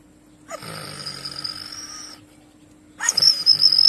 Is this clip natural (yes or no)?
yes